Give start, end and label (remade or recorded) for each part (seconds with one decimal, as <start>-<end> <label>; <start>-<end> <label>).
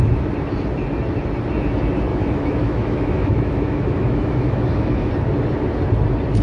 0.0-2.1 recorded; 2.1-5.1 remade; 5.1-6.4 recorded